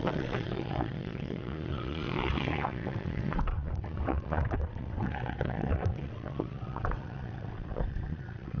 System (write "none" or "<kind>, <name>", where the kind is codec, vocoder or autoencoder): vocoder, WaveNeXt